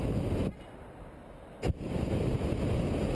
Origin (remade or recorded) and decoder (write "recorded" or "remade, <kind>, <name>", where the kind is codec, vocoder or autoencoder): remade, vocoder, BigVGAN v2